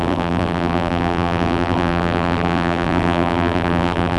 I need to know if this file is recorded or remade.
remade